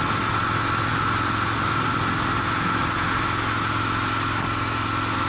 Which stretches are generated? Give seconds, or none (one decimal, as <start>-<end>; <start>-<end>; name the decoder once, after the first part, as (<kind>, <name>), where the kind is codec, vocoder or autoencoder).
none

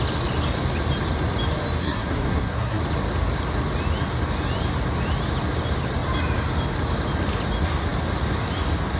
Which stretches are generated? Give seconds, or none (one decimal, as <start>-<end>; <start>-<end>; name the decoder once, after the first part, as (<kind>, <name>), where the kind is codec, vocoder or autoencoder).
1.8-2.8 (codec, SNAC)

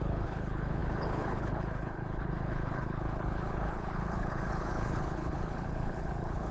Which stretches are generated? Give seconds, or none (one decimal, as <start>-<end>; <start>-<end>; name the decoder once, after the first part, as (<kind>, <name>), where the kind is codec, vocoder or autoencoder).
0.0-6.5 (codec, HILCodec)

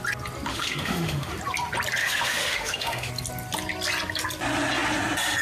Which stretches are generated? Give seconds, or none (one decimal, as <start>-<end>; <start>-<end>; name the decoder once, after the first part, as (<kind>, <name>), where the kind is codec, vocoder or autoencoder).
0.5-1.3 (autoencoder, DAC-VAE); 2.0-3.1

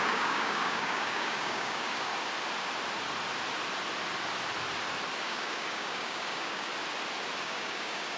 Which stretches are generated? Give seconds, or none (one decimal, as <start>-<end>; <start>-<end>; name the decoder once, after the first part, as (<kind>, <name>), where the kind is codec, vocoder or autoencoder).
0.0-2.1 (codec, DAC); 5.2-6.7; 7.4-8.2